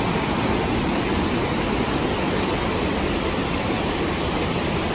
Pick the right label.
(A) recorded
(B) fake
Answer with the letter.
A